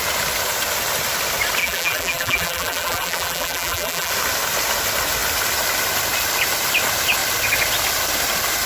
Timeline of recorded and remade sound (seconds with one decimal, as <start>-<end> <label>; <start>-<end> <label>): 0.0-1.6 recorded; 1.6-4.1 remade; 4.1-8.7 recorded